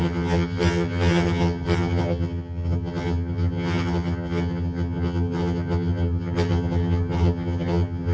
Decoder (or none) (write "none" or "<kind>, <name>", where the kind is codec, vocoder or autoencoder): vocoder, HiFi-GAN